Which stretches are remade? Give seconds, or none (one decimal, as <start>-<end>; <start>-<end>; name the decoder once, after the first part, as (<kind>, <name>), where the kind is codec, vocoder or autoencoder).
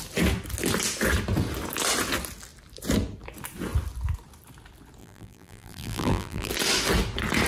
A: 5.0-6.5 (vocoder, BigVGAN v2)